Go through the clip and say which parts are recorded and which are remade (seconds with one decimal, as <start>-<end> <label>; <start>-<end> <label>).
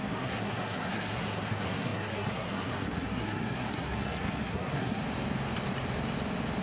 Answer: 0.0-5.0 remade; 5.0-6.6 recorded